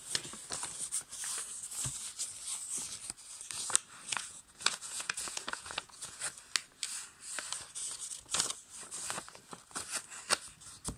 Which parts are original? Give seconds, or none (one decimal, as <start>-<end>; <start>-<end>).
0.0-4.1; 6.2-11.0